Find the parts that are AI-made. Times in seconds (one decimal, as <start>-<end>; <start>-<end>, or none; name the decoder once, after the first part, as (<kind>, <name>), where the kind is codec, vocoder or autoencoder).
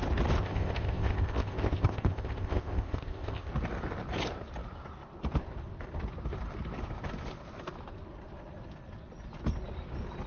0.4-3.5 (codec, ZipCodec)